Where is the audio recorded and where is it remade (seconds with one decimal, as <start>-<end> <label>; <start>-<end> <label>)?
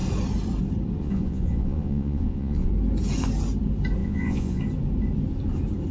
0.0-1.0 recorded; 1.0-2.7 remade; 2.7-4.0 recorded; 4.0-4.6 remade; 4.6-5.9 recorded